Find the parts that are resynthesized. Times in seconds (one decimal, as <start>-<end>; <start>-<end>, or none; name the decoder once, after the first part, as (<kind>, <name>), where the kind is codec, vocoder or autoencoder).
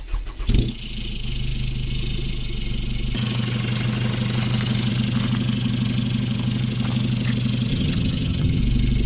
7.7-8.6 (vocoder, HiFi-GAN)